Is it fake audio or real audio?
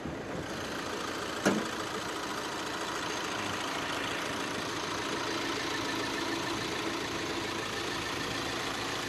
real